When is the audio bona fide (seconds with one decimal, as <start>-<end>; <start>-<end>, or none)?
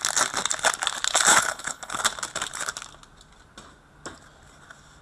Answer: 0.0-1.3; 2.0-5.0